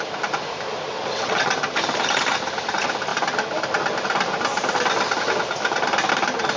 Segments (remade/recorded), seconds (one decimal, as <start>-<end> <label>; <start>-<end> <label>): 0.0-0.9 recorded; 0.9-1.5 remade; 1.5-6.6 recorded